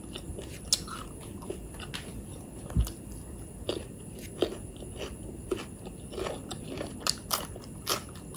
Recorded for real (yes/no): yes